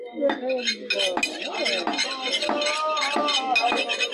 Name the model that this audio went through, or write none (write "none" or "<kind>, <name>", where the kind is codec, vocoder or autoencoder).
none